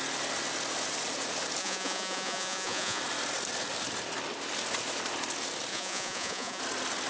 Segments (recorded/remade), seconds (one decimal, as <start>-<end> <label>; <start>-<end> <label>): 0.0-1.6 recorded; 1.6-3.0 remade; 3.0-5.7 recorded; 5.7-6.6 remade; 6.6-7.1 recorded